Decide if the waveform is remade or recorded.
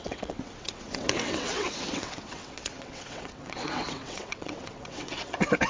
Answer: remade